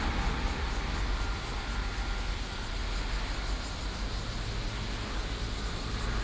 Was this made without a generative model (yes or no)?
yes